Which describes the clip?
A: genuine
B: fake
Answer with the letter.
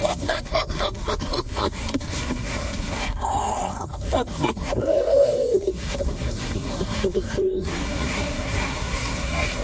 B